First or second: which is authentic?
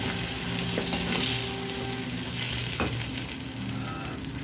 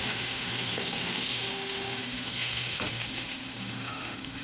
first